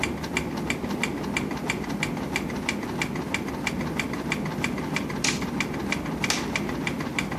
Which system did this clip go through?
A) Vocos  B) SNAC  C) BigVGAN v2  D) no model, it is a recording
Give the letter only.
D